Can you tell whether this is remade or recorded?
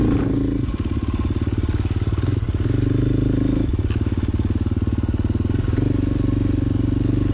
recorded